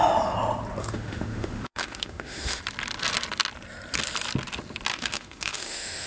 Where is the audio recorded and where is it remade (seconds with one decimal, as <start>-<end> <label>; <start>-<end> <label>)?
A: 0.0-0.8 recorded; 0.8-2.6 remade; 2.6-4.9 recorded; 4.9-6.1 remade